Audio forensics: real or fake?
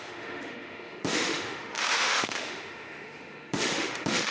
fake